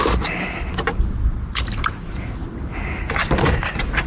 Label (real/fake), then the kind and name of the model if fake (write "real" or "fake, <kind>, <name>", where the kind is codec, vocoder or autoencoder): real